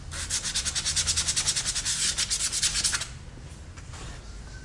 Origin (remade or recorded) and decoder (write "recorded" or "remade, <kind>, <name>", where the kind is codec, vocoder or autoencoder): recorded